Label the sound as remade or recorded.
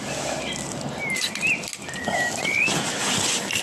recorded